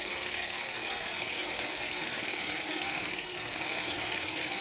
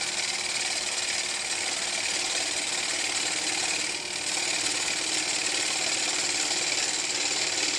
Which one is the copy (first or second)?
first